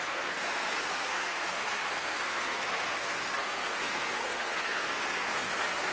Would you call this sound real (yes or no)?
no